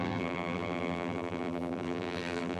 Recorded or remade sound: remade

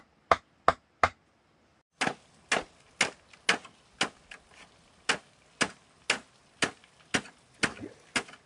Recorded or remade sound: recorded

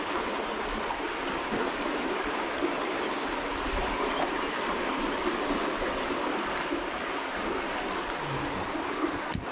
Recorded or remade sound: recorded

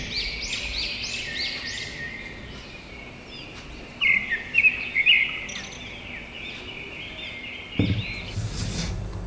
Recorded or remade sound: recorded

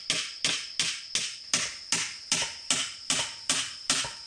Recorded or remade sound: recorded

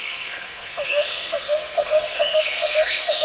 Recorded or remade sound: remade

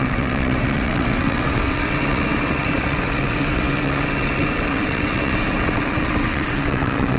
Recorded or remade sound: remade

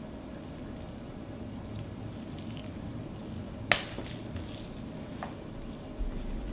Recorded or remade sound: recorded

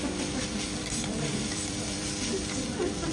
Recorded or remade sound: remade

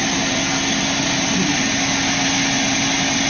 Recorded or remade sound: recorded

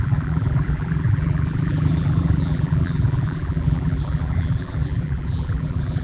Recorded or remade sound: remade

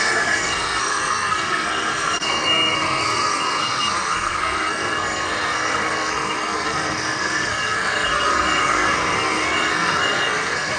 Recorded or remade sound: remade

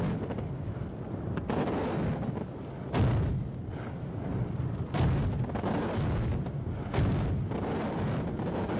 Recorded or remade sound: recorded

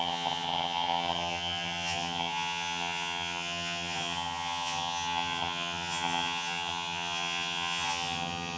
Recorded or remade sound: remade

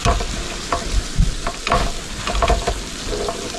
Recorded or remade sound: recorded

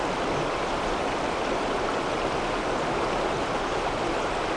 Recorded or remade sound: recorded